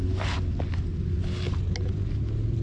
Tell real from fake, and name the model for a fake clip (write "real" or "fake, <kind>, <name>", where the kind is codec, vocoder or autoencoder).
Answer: real